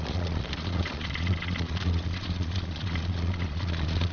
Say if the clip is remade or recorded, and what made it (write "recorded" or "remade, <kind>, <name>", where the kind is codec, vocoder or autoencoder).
remade, vocoder, Vocos